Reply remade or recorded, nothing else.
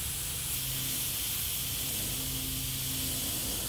recorded